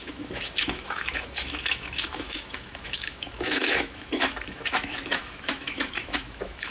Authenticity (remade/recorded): remade